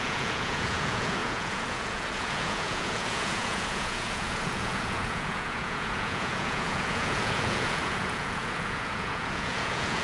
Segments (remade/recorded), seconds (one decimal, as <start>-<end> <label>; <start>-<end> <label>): 0.0-10.0 remade

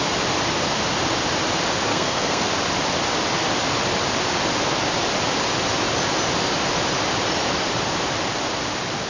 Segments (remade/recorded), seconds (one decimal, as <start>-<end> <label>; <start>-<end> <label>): 0.0-1.9 recorded; 1.9-2.5 remade; 2.5-9.1 recorded

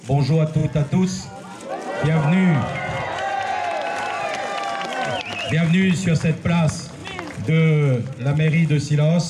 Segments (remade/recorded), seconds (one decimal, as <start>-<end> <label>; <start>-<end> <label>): 0.0-9.3 recorded

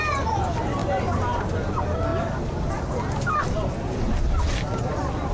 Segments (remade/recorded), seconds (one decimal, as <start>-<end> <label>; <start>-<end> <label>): 0.0-0.8 recorded; 0.8-1.4 remade; 1.4-5.3 recorded

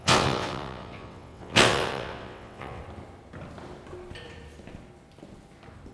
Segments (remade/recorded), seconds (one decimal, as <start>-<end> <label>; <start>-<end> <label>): 0.0-2.8 remade; 2.8-5.9 recorded

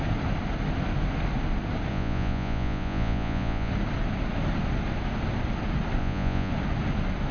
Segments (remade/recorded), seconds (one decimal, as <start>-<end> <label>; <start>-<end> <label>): 0.0-1.9 recorded; 1.9-3.7 remade; 3.7-6.0 recorded; 6.0-6.5 remade; 6.5-7.3 recorded

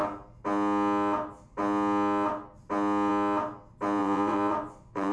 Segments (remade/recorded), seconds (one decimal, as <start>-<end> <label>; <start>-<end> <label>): 0.0-4.0 recorded; 4.0-5.1 remade

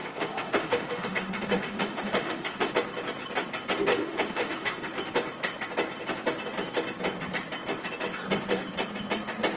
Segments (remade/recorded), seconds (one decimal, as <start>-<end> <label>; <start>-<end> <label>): 0.0-2.7 remade; 2.7-3.9 recorded; 3.9-4.9 remade; 4.9-9.6 recorded